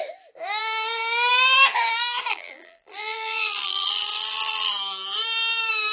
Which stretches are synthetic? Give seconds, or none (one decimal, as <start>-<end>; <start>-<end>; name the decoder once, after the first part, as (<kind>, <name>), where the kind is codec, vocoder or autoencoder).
2.3-4.7 (vocoder, BigVGAN v2)